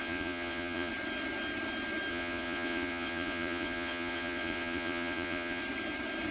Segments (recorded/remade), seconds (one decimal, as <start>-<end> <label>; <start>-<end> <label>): 0.0-0.9 remade; 0.9-2.1 recorded; 2.1-5.6 remade; 5.6-6.3 recorded